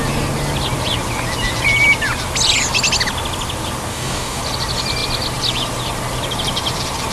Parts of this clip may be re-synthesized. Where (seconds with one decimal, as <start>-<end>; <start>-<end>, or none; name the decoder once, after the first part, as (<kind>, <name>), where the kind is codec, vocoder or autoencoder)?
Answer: 3.9-4.4 (codec, DAC)